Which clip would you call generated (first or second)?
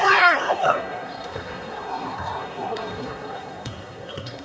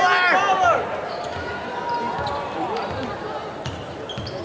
first